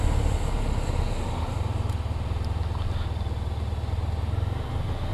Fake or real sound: real